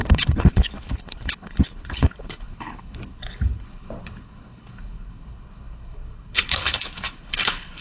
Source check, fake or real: fake